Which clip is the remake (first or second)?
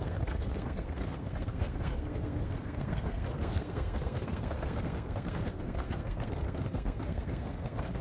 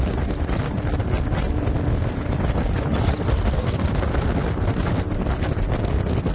first